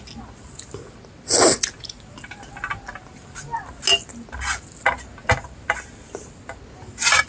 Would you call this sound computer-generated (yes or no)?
no